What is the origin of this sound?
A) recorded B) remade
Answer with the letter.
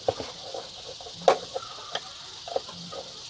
A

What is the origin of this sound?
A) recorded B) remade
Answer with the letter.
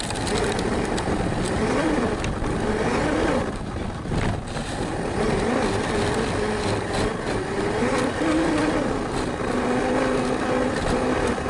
A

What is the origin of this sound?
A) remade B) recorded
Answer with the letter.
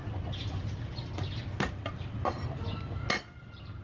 B